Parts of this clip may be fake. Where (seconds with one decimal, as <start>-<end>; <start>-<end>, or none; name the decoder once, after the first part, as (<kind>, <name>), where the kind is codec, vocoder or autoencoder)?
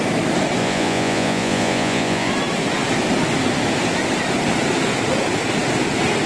0.6-2.3 (vocoder, Vocos)